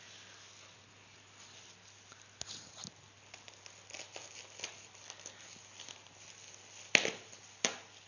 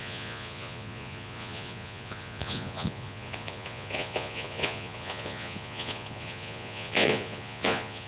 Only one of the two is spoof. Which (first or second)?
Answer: second